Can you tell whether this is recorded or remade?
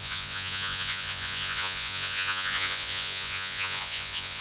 remade